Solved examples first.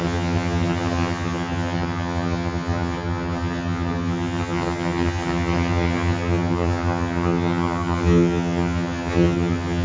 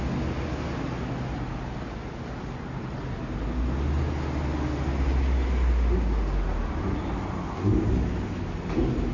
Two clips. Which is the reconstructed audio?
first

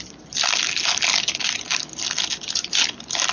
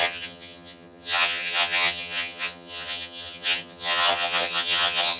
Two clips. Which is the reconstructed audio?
second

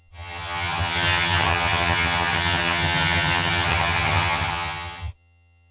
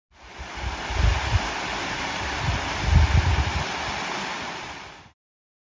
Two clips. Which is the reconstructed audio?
first